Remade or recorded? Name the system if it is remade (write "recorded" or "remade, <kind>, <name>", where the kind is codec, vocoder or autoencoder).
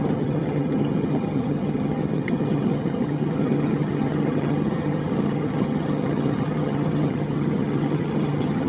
remade, vocoder, HiFi-GAN